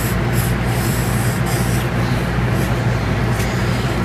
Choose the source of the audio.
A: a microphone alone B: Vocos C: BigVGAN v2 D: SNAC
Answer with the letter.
A